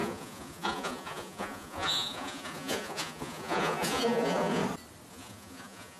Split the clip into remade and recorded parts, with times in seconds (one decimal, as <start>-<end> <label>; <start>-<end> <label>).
0.0-4.6 remade; 4.6-5.1 recorded; 5.1-6.0 remade

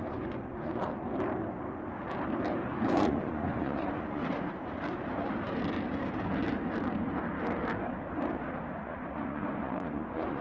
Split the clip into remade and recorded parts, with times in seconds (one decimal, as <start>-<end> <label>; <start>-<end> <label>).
0.0-0.9 remade; 0.9-2.8 recorded; 2.8-4.2 remade; 4.2-8.8 recorded; 8.8-10.4 remade

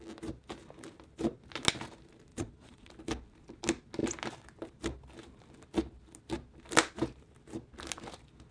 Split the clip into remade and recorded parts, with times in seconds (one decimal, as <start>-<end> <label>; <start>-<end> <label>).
0.0-2.3 recorded; 2.3-2.9 remade; 2.9-8.5 recorded